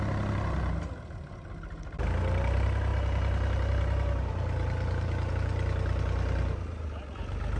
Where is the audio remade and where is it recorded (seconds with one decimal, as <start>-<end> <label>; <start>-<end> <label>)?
0.0-7.6 recorded